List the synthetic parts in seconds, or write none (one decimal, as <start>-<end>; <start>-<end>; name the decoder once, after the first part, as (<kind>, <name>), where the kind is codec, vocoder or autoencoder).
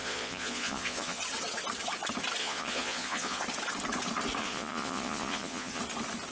0.0-1.2 (vocoder, Vocos); 2.4-3.4; 4.4-5.8